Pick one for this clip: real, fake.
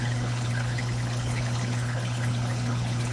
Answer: fake